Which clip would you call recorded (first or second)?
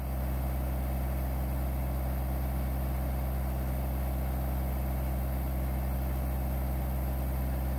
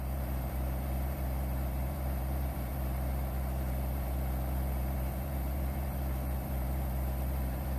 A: first